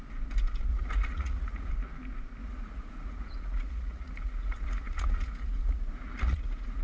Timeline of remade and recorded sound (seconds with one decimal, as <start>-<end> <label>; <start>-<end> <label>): 0.0-0.7 recorded; 0.7-1.7 remade; 1.7-2.4 recorded; 2.4-6.8 remade